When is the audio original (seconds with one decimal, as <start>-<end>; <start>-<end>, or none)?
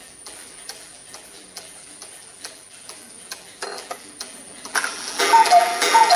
none